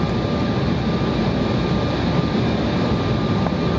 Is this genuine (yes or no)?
yes